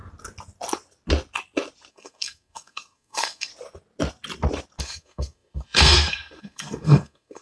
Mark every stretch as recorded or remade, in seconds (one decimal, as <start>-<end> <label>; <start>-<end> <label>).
0.0-1.9 recorded; 1.9-3.5 remade; 3.5-4.8 recorded; 4.8-7.4 remade